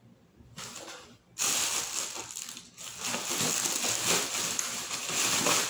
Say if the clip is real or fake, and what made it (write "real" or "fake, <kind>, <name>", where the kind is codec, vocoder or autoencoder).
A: real